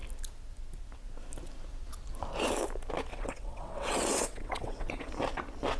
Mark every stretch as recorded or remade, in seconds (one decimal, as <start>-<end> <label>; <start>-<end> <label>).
0.0-3.1 recorded; 3.1-5.1 remade; 5.1-5.8 recorded